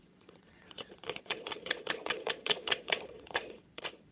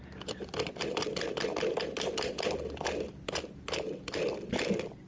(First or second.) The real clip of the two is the second